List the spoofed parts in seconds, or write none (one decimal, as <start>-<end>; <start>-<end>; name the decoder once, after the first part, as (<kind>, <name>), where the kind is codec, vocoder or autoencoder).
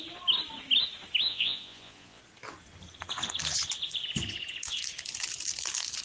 1.3-2.2 (vocoder, Vocos)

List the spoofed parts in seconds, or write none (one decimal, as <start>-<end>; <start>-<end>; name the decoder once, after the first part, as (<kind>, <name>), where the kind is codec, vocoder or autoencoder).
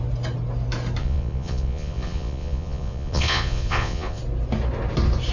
1.0-4.2 (vocoder, Vocos)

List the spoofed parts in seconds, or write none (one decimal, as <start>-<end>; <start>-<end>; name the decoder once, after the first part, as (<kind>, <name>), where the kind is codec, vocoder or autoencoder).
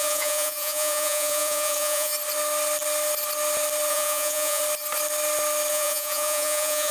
0.0-2.1 (vocoder, Vocos); 3.9-4.6; 5.7-6.9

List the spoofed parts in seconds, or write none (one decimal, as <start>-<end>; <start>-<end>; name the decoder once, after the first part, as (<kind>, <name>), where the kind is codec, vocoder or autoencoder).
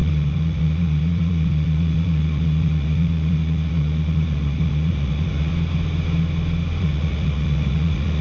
0.0-5.5 (vocoder, Vocos); 6.8-8.2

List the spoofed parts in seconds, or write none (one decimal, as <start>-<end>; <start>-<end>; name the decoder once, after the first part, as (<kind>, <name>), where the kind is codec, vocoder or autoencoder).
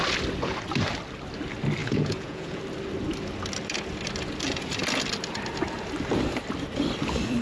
1.8-2.6 (vocoder, Vocos)